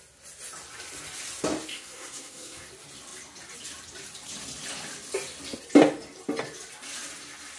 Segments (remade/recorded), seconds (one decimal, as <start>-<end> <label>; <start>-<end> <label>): 0.0-1.7 recorded; 1.7-2.7 remade; 2.7-7.6 recorded